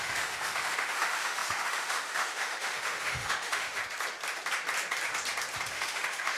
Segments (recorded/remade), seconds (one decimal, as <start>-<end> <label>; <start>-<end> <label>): 0.0-3.8 remade; 3.8-5.7 recorded; 5.7-6.4 remade